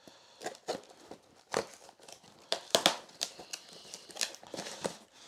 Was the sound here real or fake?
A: real